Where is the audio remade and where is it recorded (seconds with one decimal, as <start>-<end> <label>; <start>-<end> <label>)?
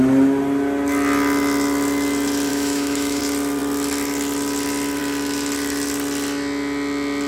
0.0-2.5 recorded; 2.5-3.2 remade; 3.2-7.3 recorded